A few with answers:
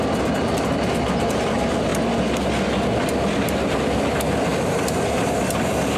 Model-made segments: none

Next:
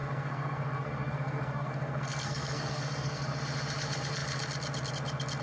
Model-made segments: 0.0-3.2 (codec, SNAC)

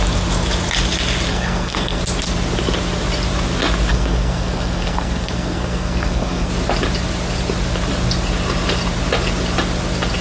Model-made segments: 1.3-2.0 (codec, SNAC); 3.9-6.5

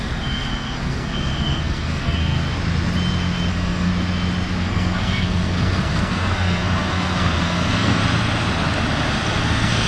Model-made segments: 0.0-2.4 (codec, SNAC); 3.5-3.9; 4.6-8.0; 9.4-9.9

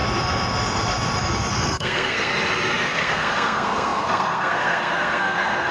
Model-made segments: 1.5-2.3 (codec, SNAC); 2.8-5.7